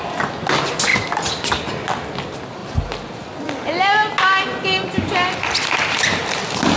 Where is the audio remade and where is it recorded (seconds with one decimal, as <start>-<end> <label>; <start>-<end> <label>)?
0.0-6.8 recorded